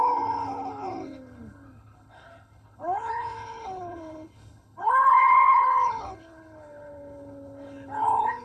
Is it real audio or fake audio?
fake